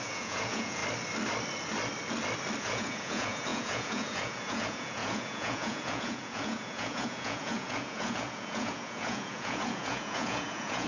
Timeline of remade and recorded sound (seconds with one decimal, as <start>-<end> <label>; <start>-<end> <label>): 0.0-0.8 remade; 0.8-2.6 recorded; 2.6-10.9 remade